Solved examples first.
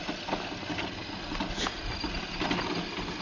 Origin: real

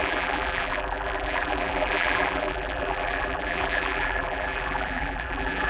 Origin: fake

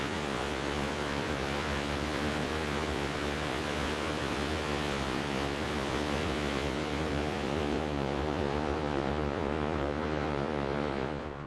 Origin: fake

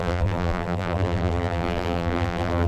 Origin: fake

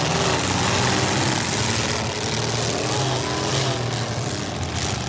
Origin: real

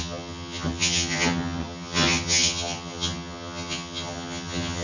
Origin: fake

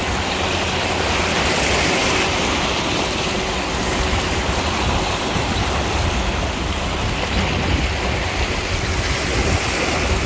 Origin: real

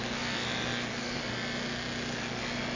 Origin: real